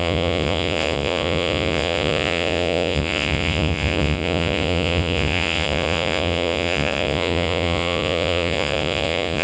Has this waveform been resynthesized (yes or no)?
yes